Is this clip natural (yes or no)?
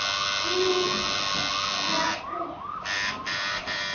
yes